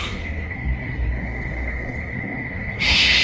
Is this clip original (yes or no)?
no